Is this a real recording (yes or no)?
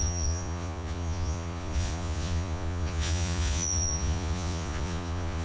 no